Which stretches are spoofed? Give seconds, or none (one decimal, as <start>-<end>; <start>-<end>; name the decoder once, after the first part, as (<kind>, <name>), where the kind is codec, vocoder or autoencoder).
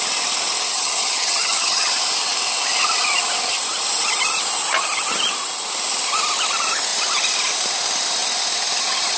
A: 0.7-1.9 (vocoder, HiFi-GAN)